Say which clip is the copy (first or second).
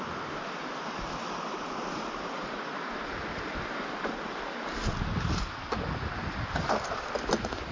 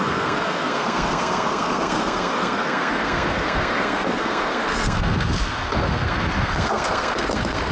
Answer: second